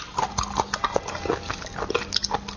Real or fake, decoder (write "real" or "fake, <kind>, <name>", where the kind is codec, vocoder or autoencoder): real